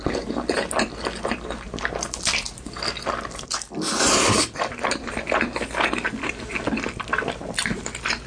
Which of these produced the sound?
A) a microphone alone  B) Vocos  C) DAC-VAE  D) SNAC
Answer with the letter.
A